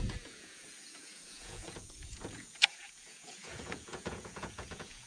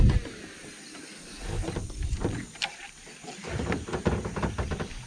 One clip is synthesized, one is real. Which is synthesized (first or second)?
first